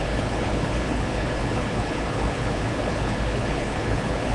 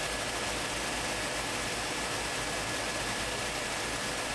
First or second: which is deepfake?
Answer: first